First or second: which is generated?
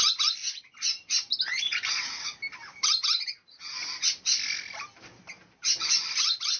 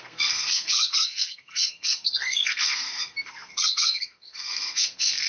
second